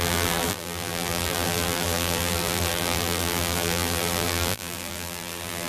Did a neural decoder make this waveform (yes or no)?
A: yes